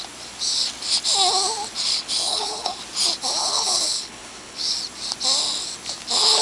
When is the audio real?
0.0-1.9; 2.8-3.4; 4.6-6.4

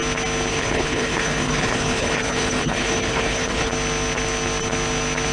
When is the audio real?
0.0-0.5; 3.7-5.3

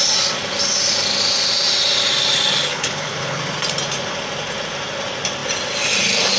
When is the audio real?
0.0-2.7; 3.4-6.4

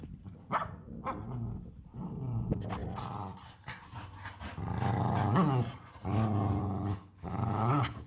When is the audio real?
0.0-6.6

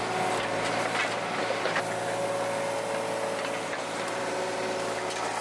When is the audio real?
0.0-5.4